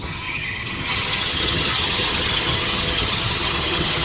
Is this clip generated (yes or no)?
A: yes